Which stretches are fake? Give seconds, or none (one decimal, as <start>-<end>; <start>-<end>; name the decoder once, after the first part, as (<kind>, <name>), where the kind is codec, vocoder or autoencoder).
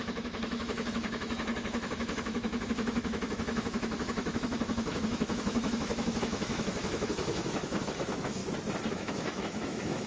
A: 0.0-8.4 (autoencoder, DAC-VAE); 8.9-10.1